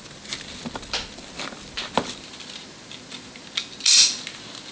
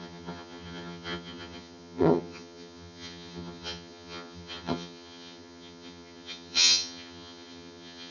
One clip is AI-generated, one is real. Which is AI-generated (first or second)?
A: second